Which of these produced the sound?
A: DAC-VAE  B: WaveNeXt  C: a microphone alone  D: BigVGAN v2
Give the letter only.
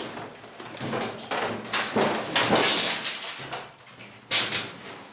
C